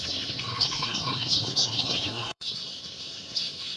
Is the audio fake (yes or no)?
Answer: yes